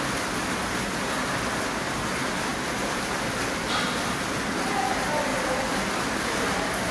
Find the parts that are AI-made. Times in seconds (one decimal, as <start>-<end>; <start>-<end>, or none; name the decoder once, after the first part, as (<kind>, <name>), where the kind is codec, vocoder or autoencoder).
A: 2.5-4.7 (vocoder, BigVGAN v2); 5.3-6.2